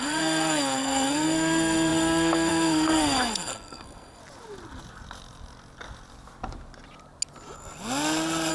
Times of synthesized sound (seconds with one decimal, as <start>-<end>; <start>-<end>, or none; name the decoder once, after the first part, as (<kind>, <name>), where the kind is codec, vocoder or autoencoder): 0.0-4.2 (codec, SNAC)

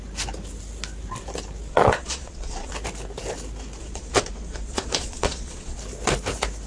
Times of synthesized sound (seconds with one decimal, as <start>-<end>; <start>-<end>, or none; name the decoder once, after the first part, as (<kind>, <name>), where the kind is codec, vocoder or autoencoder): 1.7-2.7 (vocoder, Vocos); 3.8-5.8

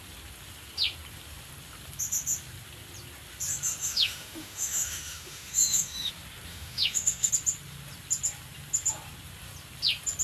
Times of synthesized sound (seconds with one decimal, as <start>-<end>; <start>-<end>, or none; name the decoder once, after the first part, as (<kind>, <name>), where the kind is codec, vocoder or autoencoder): 3.8-6.1 (autoencoder, DAC-VAE); 6.5-7.3

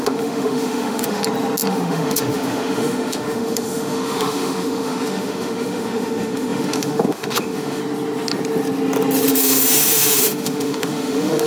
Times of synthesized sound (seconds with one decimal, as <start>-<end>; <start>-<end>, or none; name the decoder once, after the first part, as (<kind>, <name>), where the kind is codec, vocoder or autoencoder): 0.0-1.2 (autoencoder, DAC-VAE); 1.7-7.8; 9.3-11.5